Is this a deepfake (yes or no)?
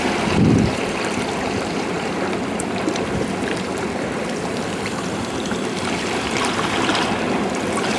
yes